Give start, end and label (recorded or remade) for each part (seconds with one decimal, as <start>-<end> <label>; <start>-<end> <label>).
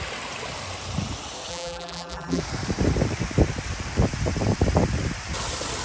0.0-1.5 recorded; 1.5-2.4 remade; 2.4-5.8 recorded